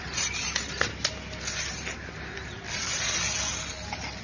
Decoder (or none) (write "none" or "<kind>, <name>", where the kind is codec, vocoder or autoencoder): none